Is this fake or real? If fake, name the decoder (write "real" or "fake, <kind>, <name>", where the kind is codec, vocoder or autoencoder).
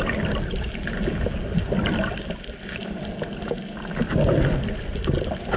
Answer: real